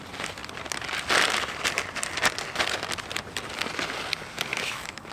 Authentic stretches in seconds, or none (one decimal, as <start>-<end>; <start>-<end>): 0.0-4.5